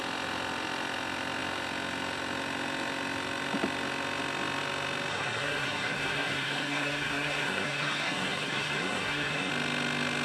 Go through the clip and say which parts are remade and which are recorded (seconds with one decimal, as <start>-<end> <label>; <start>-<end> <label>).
0.0-5.1 recorded; 5.1-9.5 remade; 9.5-10.2 recorded